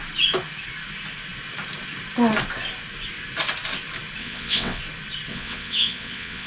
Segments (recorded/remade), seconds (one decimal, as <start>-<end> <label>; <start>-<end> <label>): 0.0-4.2 recorded; 4.2-4.8 remade; 4.8-5.3 recorded; 5.3-6.5 remade